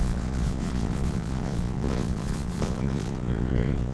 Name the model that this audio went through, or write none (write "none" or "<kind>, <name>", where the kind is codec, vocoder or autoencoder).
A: vocoder, Vocos